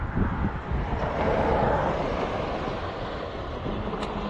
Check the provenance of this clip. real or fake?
real